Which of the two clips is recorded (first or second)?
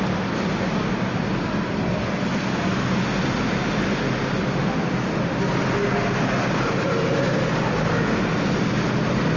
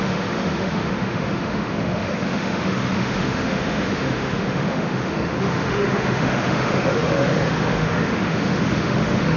first